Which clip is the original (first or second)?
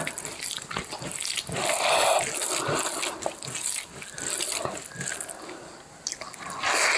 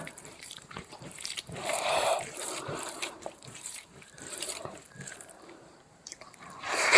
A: first